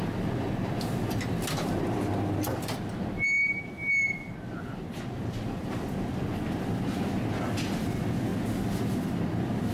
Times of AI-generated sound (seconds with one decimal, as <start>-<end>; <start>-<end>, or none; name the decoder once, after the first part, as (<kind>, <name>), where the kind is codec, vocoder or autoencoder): none